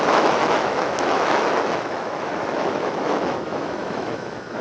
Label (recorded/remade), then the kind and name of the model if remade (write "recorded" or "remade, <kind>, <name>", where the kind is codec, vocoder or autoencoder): remade, autoencoder, DAC-VAE